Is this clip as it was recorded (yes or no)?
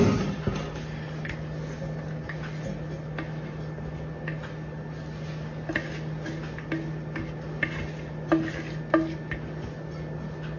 yes